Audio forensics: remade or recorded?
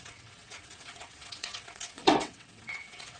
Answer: remade